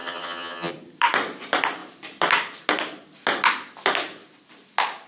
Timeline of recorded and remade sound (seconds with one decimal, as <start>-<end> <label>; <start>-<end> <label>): 0.0-0.7 remade; 0.7-5.1 recorded